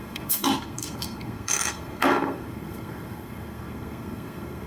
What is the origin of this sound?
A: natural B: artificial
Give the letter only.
B